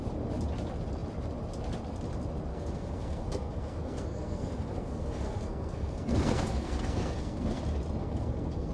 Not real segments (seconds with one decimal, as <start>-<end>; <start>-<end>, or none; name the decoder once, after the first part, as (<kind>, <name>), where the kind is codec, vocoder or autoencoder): 2.5-7.6 (codec, SNAC); 8.0-8.7

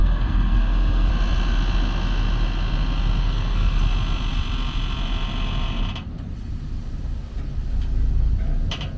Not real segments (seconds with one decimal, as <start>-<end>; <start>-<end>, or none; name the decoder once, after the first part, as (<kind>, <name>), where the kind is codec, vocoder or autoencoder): 0.0-1.1 (codec, SNAC); 3.2-3.8